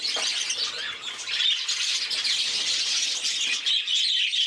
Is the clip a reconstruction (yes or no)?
no